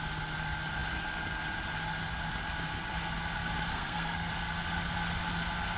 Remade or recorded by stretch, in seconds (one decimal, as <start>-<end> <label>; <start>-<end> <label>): 0.0-3.7 recorded; 3.7-4.3 remade; 4.3-5.8 recorded